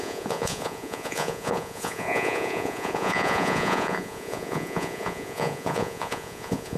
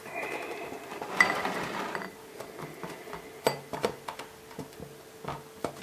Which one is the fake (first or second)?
first